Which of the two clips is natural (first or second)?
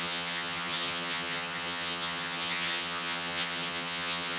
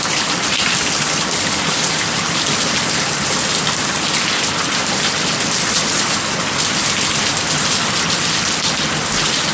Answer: second